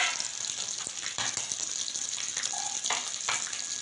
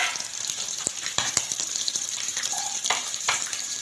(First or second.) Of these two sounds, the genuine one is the first